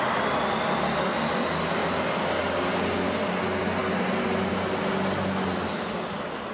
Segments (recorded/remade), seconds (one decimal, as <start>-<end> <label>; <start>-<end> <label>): 0.0-6.5 recorded